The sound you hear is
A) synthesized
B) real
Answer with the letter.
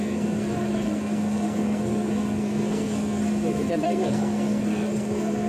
A